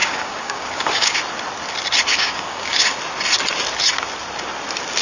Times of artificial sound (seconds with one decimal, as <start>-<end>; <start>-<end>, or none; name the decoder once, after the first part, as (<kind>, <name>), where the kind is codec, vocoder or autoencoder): 0.0-1.2 (codec, DAC); 2.1-3.0